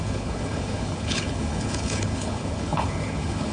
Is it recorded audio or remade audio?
remade